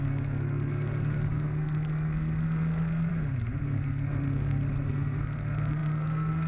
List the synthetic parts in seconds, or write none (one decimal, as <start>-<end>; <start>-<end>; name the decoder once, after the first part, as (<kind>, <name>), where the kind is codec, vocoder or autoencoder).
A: 0.0-3.1 (codec, SNAC); 3.6-6.5